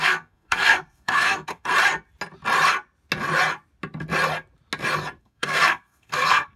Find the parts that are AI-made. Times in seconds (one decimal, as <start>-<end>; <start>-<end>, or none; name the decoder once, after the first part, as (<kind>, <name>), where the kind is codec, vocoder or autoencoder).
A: 0.0-1.7 (codec, SNAC); 5.2-6.6